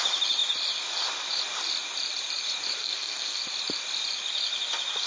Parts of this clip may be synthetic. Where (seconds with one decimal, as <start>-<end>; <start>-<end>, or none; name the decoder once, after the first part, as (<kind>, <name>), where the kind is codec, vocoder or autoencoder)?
2.8-3.4 (codec, SNAC)